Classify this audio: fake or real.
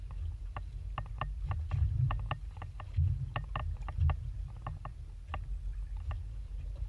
real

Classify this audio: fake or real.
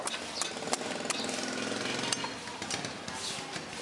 real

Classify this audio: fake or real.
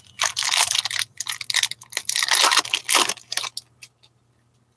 real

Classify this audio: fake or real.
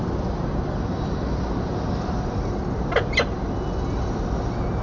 real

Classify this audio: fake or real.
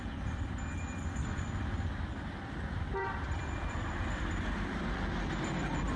real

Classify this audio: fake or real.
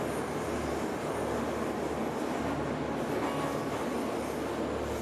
real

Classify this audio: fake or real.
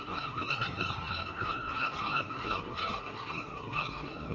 fake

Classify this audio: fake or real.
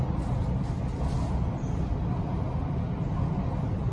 real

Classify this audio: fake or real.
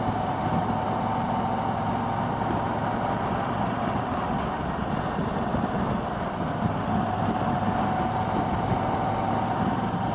real